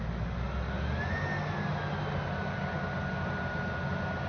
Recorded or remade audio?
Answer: recorded